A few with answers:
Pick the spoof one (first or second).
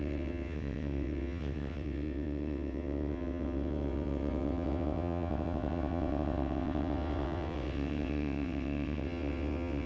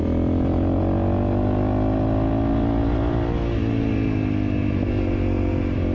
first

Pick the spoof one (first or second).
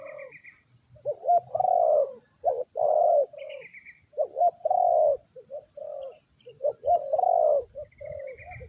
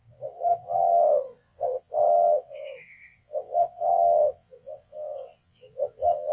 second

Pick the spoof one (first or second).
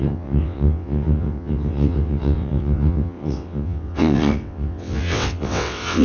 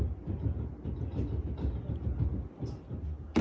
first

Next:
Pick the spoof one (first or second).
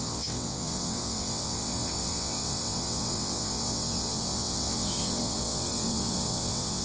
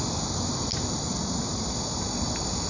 first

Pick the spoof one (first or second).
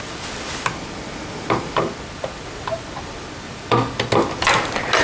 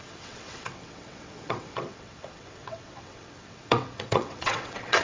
second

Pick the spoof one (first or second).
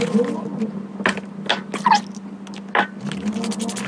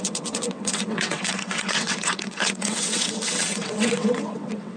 second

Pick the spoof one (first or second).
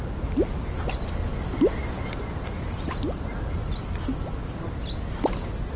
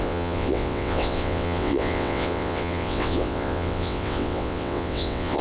second